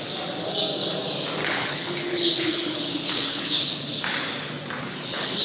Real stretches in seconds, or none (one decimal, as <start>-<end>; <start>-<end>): 0.0-1.4; 3.8-4.8